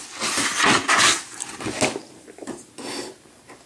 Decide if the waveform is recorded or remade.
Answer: recorded